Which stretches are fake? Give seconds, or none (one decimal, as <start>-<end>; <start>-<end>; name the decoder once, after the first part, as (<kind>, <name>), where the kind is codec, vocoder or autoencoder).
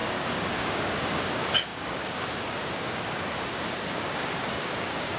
0.0-5.2 (codec, DAC)